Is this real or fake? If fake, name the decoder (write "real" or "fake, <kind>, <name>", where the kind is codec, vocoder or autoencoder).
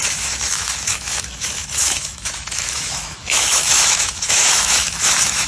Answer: fake, autoencoder, DAC-VAE